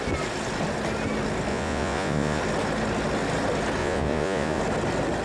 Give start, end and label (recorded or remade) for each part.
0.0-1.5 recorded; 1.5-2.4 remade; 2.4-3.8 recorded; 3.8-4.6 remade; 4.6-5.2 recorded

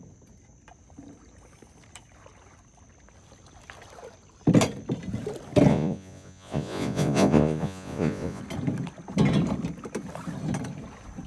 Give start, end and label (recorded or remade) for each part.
0.0-5.7 recorded; 5.7-8.4 remade; 8.4-11.3 recorded